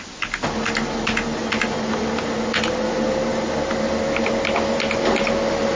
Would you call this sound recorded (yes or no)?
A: yes